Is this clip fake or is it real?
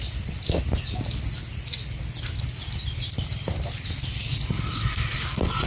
real